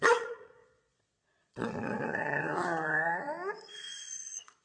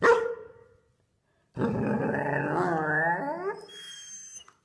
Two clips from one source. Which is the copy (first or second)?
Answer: first